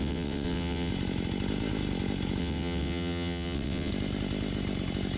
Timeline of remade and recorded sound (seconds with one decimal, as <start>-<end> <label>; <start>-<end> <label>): 0.0-0.9 remade; 0.9-2.4 recorded; 2.4-3.9 remade; 3.9-5.2 recorded